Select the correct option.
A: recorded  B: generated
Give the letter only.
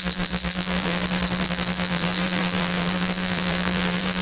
B